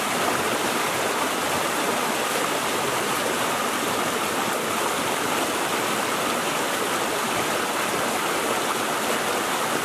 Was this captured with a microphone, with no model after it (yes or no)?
yes